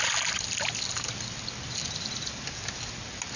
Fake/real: real